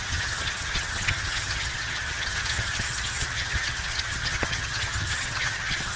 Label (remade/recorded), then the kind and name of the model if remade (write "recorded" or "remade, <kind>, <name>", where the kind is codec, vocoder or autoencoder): remade, vocoder, HiFi-GAN